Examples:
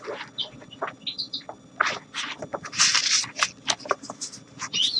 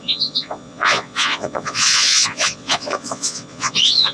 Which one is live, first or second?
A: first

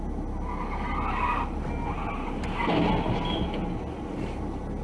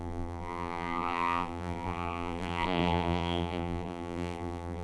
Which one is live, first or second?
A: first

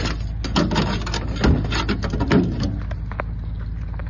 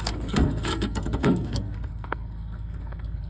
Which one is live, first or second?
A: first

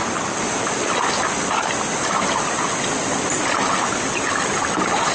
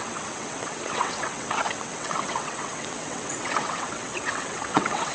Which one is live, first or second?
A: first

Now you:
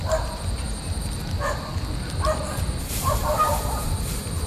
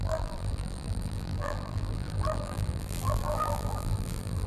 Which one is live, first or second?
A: first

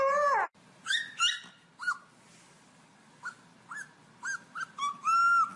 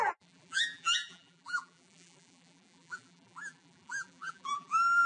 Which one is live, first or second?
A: first